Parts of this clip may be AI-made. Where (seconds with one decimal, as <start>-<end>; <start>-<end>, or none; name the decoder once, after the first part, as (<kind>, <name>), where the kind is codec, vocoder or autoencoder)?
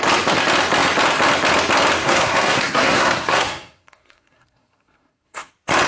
2.0-5.5 (codec, SNAC)